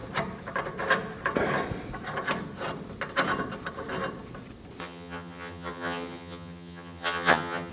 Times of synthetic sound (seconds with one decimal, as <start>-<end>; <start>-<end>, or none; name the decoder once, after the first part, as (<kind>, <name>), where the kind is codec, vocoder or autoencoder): 4.8-7.7 (vocoder, HiFi-GAN)